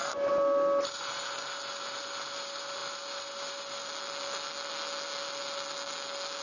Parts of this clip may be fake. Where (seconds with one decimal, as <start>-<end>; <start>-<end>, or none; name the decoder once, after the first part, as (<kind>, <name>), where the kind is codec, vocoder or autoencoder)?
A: none